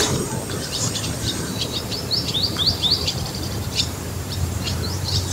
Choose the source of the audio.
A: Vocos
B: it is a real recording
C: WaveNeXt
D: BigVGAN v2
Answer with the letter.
D